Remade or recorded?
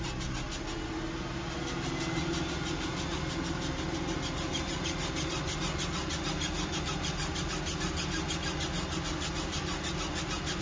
recorded